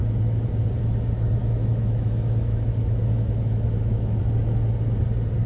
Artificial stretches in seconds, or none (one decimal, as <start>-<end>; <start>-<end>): 1.4-4.2